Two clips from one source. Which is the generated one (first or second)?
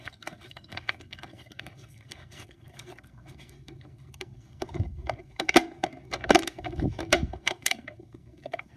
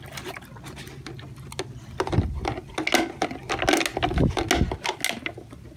first